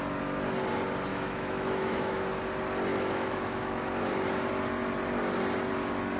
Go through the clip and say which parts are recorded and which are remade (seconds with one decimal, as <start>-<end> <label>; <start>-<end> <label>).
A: 0.0-1.1 recorded; 1.1-2.3 remade; 2.3-2.9 recorded; 2.9-3.9 remade; 3.9-6.2 recorded